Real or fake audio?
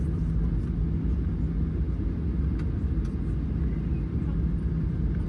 real